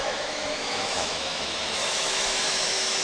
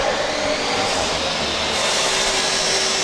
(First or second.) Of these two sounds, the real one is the second